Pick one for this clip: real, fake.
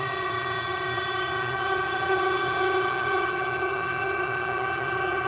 fake